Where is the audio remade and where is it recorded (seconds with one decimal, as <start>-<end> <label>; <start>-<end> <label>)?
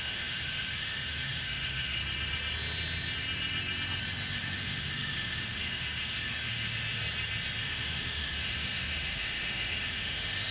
0.0-2.0 remade; 2.0-4.4 recorded; 4.4-7.0 remade; 7.0-7.6 recorded; 7.6-10.5 remade